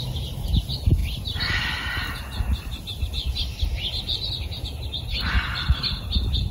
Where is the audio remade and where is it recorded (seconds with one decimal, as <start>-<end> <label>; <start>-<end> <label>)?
0.0-6.5 recorded